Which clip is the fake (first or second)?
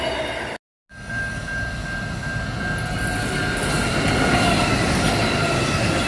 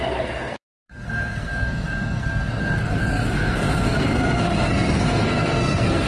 second